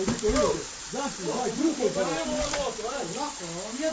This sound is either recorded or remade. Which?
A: recorded